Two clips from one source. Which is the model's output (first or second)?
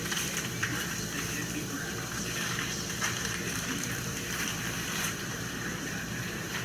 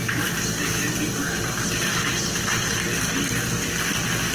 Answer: first